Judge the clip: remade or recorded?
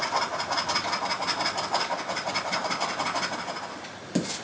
recorded